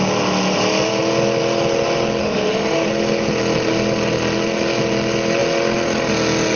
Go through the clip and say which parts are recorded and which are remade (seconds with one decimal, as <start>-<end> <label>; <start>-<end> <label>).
0.0-2.2 recorded; 2.2-2.9 remade; 2.9-6.6 recorded